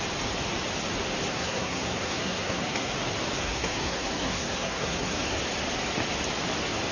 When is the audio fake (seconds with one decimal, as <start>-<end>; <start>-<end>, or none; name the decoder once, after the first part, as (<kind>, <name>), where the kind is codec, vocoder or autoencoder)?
1.3-2.9 (codec, SNAC); 3.4-5.4